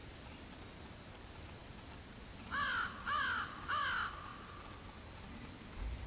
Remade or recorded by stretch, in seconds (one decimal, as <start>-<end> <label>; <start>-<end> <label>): 0.0-6.1 recorded